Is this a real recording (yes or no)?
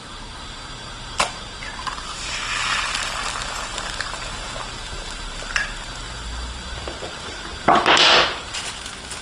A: yes